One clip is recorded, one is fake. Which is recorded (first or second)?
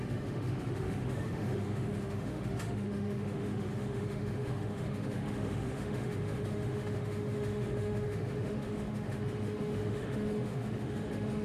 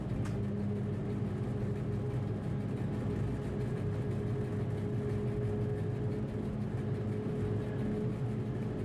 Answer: second